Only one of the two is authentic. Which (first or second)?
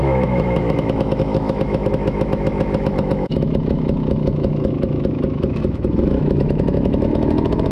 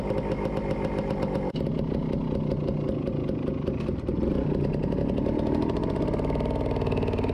second